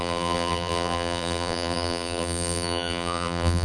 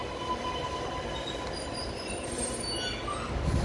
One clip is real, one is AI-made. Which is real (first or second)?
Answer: second